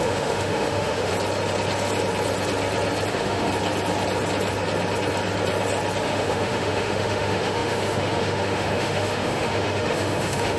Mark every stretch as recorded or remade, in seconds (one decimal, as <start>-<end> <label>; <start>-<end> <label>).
0.0-1.1 remade; 1.1-3.1 recorded; 3.1-3.5 remade; 3.5-6.0 recorded; 6.0-10.6 remade